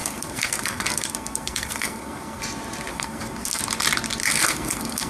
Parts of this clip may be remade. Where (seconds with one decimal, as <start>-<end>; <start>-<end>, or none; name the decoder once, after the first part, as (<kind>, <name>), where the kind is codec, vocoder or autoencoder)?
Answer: 0.0-2.4 (codec, SNAC); 2.9-3.6; 4.2-5.1